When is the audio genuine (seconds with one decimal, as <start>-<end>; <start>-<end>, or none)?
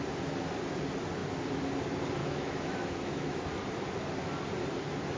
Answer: 0.0-2.2; 3.4-5.2